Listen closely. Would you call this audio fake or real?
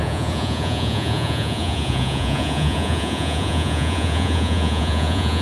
fake